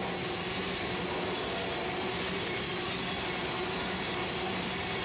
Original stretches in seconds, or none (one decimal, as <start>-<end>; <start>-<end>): 0.0-5.0